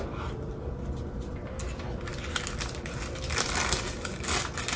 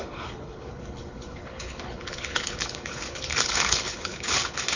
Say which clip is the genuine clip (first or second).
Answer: first